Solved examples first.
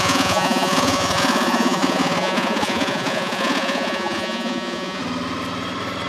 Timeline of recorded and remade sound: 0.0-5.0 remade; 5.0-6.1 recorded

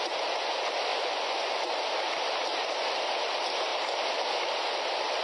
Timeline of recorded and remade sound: 0.0-0.9 recorded; 0.9-1.7 remade; 1.7-5.2 recorded

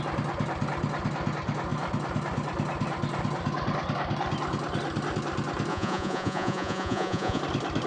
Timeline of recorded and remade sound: 0.0-5.7 recorded; 5.7-7.4 remade; 7.4-7.9 recorded

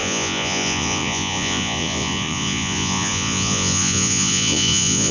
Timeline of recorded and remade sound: 0.0-5.1 remade

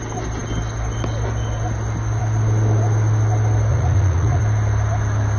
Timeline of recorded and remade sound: 0.0-3.7 recorded; 3.7-4.4 remade; 4.4-5.4 recorded